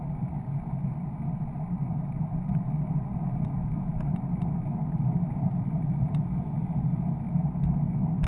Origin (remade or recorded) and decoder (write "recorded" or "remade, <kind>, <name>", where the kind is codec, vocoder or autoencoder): recorded